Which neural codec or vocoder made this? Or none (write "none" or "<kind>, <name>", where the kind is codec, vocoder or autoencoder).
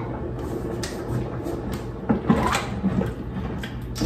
none